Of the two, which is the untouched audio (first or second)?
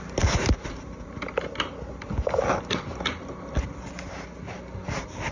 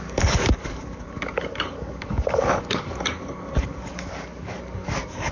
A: first